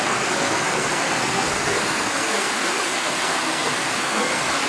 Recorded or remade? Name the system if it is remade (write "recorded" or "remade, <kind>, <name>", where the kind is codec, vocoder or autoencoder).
remade, codec, SNAC